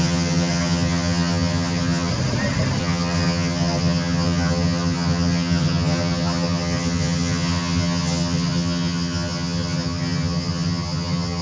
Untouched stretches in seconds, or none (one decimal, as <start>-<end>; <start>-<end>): 2.1-2.8